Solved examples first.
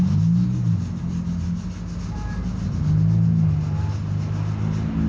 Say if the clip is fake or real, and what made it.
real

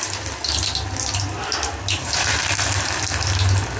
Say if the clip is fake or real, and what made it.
real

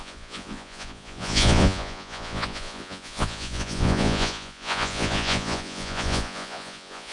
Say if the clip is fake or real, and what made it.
fake, vocoder, Vocos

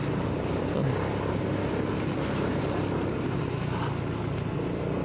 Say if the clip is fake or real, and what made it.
real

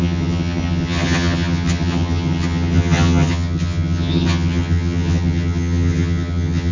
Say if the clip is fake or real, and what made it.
fake, vocoder, HiFi-GAN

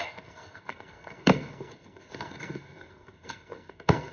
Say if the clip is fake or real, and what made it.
fake, codec, SNAC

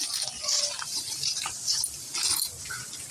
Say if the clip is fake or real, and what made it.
real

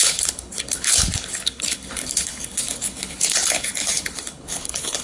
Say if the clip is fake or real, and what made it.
fake, codec, HILCodec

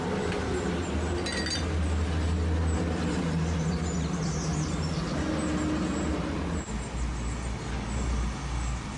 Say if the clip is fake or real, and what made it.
real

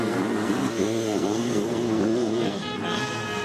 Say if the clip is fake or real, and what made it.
fake, codec, SNAC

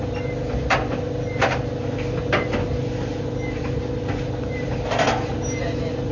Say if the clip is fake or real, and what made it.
real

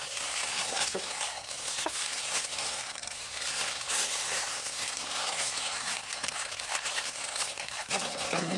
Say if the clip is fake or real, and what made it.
fake, codec, SNAC